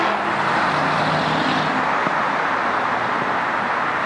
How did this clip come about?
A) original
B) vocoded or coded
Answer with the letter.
A